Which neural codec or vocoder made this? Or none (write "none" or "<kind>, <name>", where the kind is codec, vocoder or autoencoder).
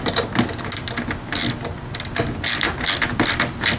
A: none